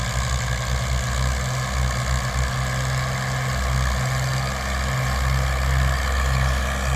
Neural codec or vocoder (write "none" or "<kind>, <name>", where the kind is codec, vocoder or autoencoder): none